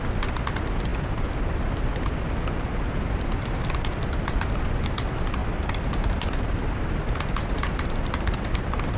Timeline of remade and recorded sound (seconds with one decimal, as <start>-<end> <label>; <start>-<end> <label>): 0.0-9.0 recorded